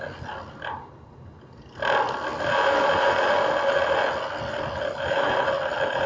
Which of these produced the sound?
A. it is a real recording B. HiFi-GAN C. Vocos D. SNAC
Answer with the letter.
A